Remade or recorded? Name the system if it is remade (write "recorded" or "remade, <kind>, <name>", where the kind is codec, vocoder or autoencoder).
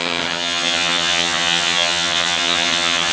remade, vocoder, HiFi-GAN